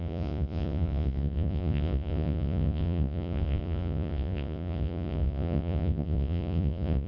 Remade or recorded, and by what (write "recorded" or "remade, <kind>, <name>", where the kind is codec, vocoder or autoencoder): remade, vocoder, Vocos